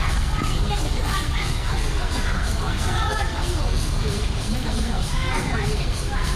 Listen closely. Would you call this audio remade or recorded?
remade